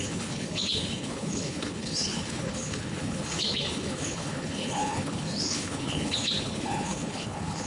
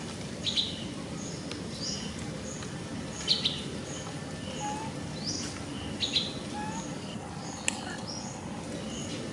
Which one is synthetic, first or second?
first